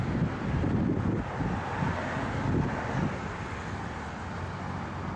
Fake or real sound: real